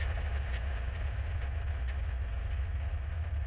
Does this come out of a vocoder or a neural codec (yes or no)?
no